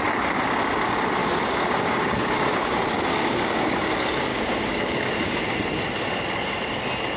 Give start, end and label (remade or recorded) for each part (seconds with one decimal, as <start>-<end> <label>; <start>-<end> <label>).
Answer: 0.0-1.2 recorded; 1.2-3.9 remade; 3.9-4.3 recorded; 4.3-5.4 remade; 5.4-7.2 recorded